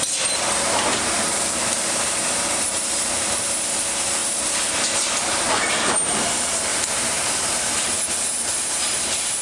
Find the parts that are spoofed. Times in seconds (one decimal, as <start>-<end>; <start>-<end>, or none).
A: 0.0-9.4